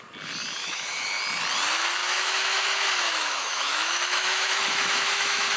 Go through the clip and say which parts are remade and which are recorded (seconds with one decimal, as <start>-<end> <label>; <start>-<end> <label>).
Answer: 0.0-0.6 recorded; 0.6-1.2 remade; 1.2-2.0 recorded; 2.0-5.6 remade